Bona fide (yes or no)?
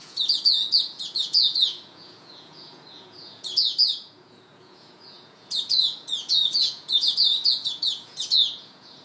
no